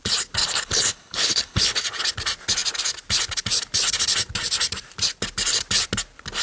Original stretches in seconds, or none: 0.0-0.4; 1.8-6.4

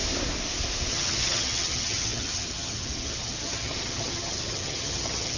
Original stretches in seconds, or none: 0.0-0.9

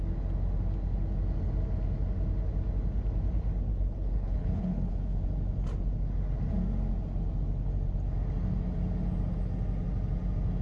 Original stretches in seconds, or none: 0.0-3.7; 5.2-10.6

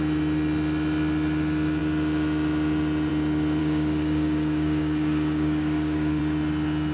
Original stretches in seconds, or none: 0.0-3.6; 6.2-6.9

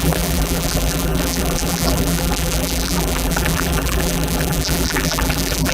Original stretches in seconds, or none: none

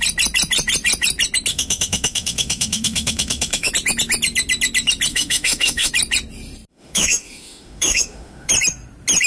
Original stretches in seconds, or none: 0.0-1.5; 3.7-5.1; 5.9-6.7; 8.5-9.3